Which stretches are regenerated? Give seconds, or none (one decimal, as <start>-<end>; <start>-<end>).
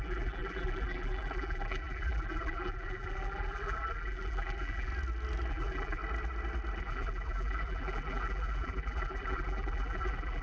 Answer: 0.0-4.9; 5.5-6.0; 6.8-10.4